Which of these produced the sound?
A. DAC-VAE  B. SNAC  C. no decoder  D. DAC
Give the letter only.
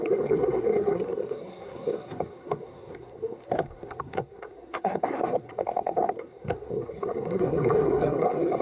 B